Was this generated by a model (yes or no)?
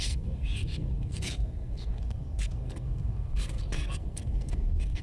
yes